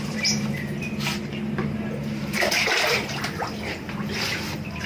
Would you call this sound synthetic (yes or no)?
no